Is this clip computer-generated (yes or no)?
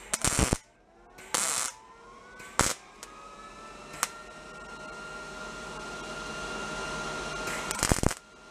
no